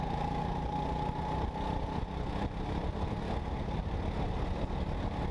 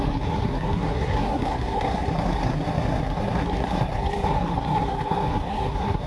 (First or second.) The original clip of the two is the first